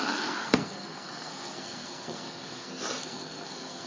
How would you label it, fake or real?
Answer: fake